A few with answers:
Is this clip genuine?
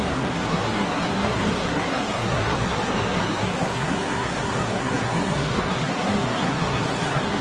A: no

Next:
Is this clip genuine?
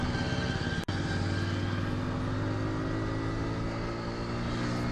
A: yes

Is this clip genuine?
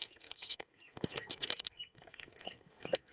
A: no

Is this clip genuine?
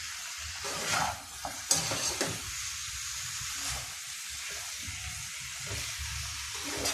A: yes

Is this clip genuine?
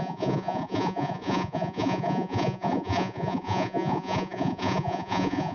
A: no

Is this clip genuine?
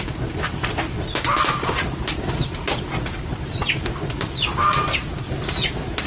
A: yes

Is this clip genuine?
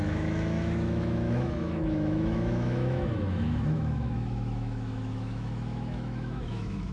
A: no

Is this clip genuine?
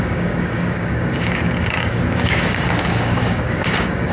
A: no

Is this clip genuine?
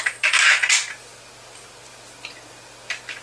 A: yes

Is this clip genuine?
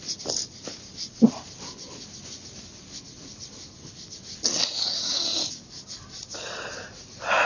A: yes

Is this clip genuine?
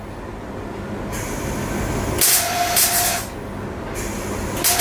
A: yes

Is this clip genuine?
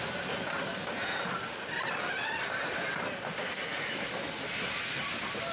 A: yes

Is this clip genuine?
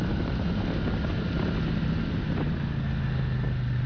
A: yes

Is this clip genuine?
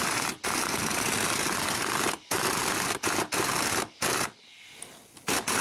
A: yes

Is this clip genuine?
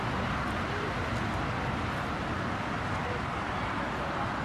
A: yes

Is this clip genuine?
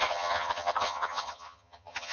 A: no